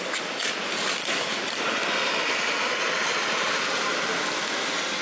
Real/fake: real